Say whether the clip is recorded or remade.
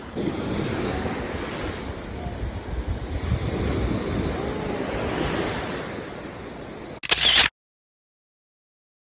recorded